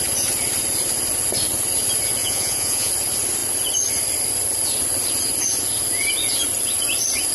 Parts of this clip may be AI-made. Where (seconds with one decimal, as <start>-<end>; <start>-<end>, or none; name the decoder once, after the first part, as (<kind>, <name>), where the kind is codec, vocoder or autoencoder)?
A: 2.2-2.9 (vocoder, Vocos)

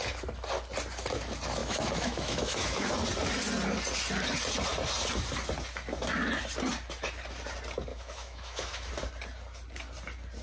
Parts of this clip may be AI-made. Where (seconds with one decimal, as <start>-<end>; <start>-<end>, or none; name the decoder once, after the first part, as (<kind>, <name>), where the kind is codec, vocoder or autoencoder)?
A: 1.6-2.9 (autoencoder, DAC-VAE); 7.9-8.9

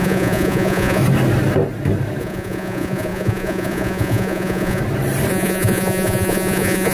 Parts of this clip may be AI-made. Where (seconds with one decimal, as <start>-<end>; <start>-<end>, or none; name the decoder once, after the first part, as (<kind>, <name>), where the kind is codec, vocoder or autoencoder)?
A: 0.0-1.0 (vocoder, Vocos); 2.2-4.8; 5.3-6.9

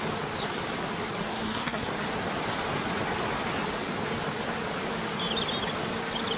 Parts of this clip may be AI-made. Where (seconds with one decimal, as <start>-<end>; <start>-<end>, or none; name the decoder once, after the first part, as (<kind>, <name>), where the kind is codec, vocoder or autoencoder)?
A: 1.3-1.9 (codec, SNAC)

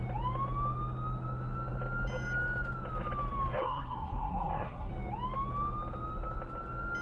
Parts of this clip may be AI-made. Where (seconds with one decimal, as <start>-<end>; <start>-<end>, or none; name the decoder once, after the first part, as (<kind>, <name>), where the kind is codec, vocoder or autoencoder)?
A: 3.6-4.9 (codec, SNAC)

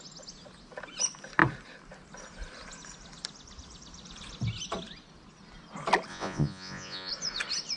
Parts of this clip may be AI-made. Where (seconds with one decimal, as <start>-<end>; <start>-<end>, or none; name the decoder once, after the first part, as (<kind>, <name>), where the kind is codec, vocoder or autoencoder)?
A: 6.1-7.1 (vocoder, Vocos)

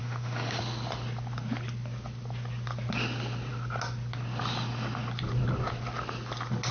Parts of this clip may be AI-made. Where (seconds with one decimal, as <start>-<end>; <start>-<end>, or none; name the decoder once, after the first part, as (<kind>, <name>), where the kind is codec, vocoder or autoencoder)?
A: 0.0-0.6 (autoencoder, DAC-VAE)

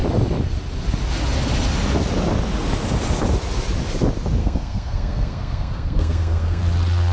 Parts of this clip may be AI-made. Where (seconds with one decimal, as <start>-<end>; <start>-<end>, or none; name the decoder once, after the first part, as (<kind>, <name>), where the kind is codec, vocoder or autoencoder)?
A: 4.4-6.6 (codec, SNAC)